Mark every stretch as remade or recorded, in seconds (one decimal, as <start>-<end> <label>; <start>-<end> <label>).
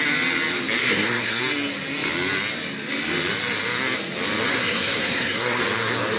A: 0.0-0.8 recorded; 0.8-1.4 remade; 1.4-4.5 recorded; 4.5-5.6 remade; 5.6-6.2 recorded